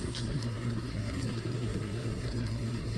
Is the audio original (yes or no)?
no